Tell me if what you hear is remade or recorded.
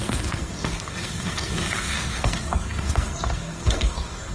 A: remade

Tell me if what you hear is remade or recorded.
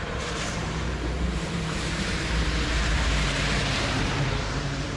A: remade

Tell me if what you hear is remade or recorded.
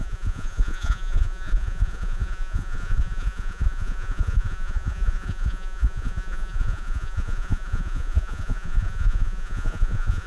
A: remade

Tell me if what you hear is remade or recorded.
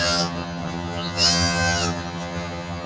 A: remade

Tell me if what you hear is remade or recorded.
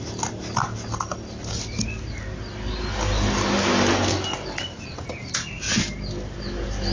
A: recorded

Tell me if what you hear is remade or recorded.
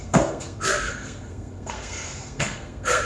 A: remade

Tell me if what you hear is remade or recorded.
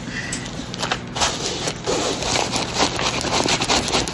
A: recorded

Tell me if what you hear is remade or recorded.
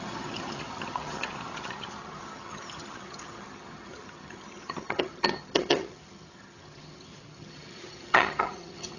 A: remade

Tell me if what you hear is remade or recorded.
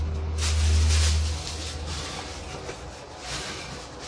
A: recorded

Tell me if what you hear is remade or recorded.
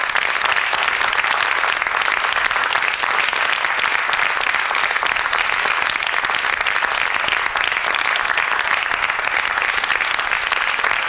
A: recorded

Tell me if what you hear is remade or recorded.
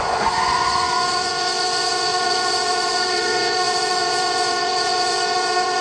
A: remade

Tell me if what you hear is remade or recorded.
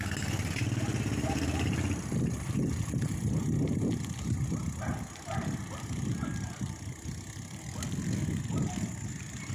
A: recorded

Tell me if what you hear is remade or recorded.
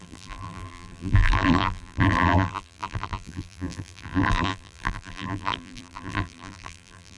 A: remade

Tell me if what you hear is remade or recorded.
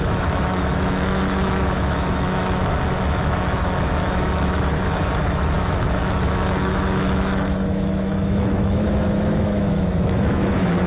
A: remade